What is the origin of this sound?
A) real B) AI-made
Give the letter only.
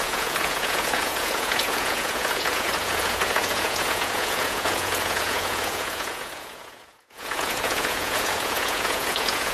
B